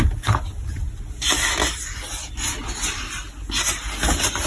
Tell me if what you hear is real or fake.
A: real